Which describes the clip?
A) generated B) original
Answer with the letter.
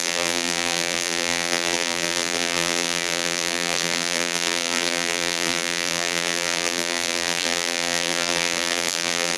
A